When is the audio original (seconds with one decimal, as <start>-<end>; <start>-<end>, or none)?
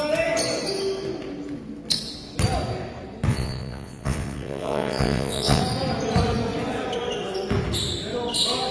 0.0-3.3; 5.6-8.7